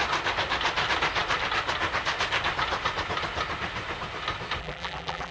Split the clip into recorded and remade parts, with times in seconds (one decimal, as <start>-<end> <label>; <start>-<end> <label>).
0.0-4.6 recorded; 4.6-5.3 remade